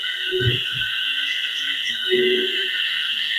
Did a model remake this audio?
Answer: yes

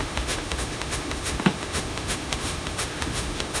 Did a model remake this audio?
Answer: yes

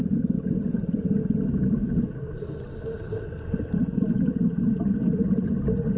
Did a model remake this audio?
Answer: no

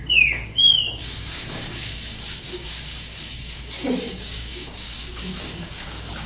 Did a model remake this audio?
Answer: yes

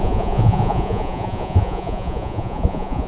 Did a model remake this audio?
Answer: yes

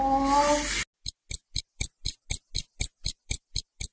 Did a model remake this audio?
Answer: no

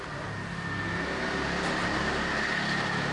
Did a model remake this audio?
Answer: no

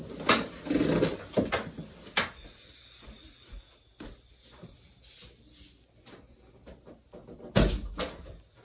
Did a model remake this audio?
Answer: no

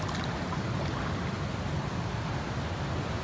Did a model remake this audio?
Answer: no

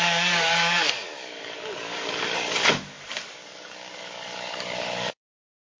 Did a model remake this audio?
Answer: yes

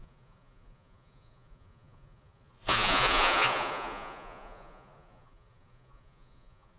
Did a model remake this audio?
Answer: yes